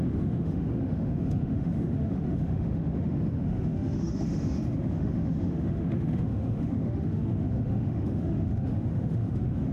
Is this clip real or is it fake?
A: fake